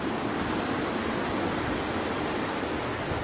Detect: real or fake real